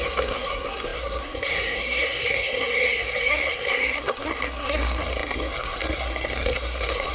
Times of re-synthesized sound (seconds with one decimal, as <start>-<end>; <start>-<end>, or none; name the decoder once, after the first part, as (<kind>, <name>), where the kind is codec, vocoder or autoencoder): 0.0-7.1 (codec, SNAC)